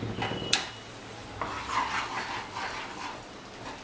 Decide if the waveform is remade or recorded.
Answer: recorded